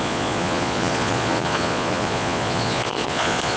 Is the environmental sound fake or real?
fake